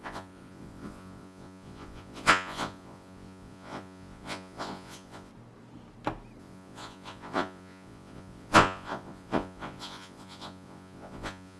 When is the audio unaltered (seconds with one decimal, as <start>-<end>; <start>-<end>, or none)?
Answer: 5.3-6.4